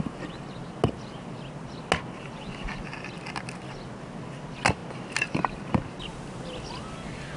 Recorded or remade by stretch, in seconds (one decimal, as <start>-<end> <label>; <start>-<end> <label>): 0.0-7.4 recorded